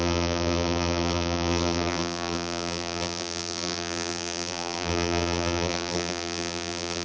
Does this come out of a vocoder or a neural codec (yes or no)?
yes